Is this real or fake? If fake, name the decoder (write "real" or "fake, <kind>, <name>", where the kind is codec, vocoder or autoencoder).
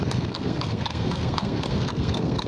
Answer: fake, codec, SNAC